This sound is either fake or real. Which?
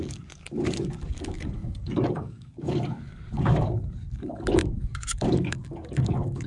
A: fake